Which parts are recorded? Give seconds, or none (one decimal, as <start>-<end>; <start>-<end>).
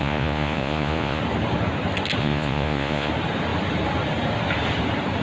1.2-2.2; 3.1-5.2